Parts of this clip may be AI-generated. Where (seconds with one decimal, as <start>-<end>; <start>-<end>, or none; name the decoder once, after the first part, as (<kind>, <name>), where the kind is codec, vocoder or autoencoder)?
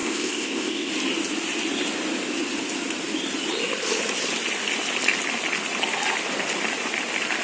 0.0-0.9 (codec, ZipCodec)